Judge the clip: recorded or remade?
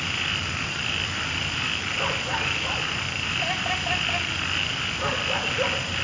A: recorded